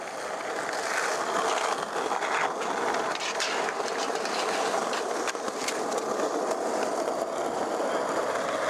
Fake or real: real